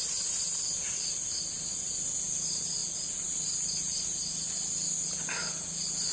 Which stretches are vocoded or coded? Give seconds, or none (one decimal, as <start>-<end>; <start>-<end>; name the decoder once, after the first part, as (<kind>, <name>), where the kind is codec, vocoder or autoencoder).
none